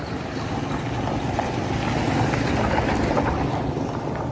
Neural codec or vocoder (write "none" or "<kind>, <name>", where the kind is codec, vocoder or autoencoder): none